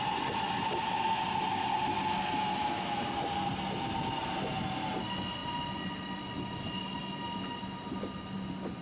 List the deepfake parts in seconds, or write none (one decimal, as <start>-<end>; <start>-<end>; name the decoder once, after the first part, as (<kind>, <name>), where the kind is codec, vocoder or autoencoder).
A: none